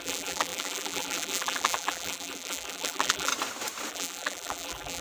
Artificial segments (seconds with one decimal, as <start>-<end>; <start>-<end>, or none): 0.0-3.3; 3.9-5.0